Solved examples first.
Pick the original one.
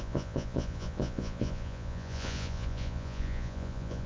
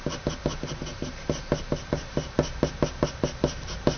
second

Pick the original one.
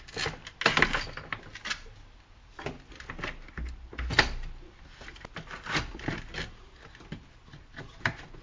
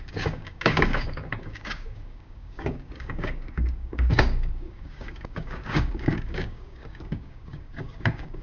first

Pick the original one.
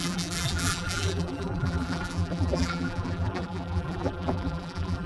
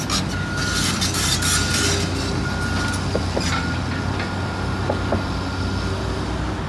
second